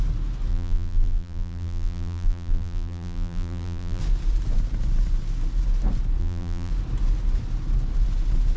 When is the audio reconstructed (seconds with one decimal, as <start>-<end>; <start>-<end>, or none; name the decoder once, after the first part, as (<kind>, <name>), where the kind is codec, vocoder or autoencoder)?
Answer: 0.5-4.0 (vocoder, BigVGAN v2); 6.2-6.7